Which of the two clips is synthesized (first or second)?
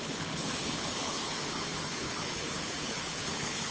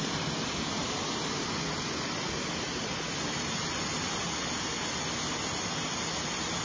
first